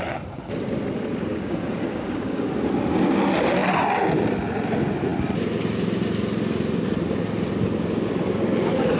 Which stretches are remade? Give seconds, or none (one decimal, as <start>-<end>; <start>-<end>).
1.3-2.6